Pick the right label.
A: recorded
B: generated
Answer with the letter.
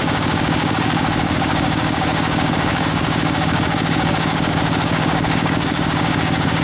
B